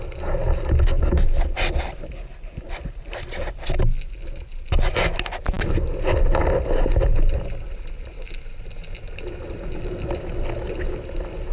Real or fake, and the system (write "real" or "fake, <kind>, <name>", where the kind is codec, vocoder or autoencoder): real